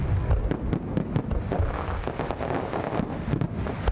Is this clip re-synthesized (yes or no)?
no